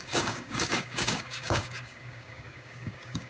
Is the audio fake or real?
fake